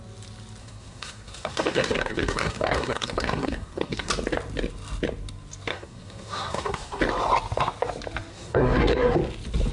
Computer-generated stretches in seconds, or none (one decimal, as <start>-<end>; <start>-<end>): 0.6-4.1; 5.7-7.0; 8.3-9.2